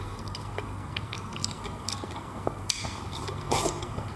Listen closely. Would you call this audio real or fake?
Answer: fake